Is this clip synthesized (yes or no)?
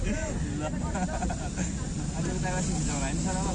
no